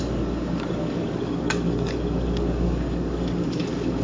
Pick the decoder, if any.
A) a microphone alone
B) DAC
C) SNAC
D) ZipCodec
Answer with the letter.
B